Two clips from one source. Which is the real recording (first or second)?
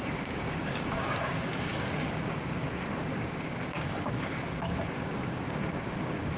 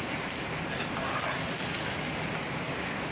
second